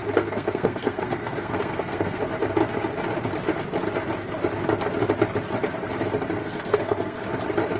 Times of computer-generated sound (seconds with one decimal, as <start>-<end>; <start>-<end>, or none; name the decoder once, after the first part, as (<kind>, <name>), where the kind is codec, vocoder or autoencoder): 0.0-2.2 (codec, SNAC); 6.4-7.2